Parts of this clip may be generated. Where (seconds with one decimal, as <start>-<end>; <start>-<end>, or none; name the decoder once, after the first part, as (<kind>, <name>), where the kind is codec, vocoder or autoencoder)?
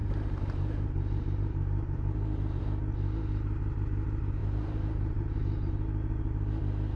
0.0-2.6 (vocoder, BigVGAN v2); 4.4-5.7